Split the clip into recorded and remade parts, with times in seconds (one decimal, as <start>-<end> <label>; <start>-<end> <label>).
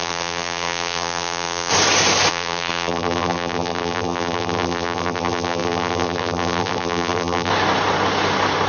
0.0-1.7 remade; 1.7-2.3 recorded; 2.3-7.5 remade; 7.5-8.7 recorded